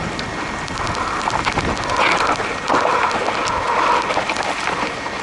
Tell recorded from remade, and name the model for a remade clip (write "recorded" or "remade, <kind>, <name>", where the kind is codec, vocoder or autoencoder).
recorded